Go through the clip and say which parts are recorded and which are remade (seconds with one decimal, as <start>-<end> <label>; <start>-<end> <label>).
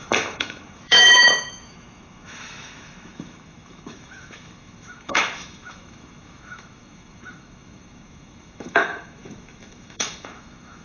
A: 0.0-10.8 remade